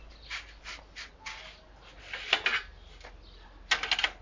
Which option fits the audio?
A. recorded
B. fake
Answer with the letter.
A